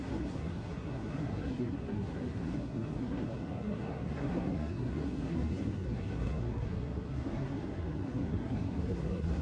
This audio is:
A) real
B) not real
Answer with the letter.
B